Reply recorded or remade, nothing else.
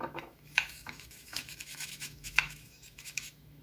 remade